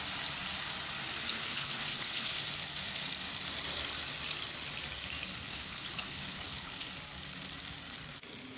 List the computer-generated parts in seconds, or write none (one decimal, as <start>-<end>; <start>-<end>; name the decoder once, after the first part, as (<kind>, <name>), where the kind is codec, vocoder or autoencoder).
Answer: 1.3-2.4 (codec, HILCodec); 5.5-6.9